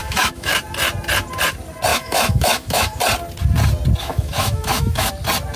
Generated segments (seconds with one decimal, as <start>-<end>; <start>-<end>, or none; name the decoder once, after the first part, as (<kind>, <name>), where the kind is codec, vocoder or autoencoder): 0.0-0.5 (autoencoder, DAC-VAE); 1.9-3.0; 4.0-5.1